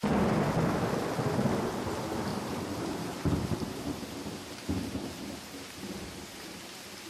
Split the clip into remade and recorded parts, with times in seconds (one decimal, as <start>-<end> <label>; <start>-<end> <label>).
0.0-2.3 recorded; 2.3-6.6 remade; 6.6-7.1 recorded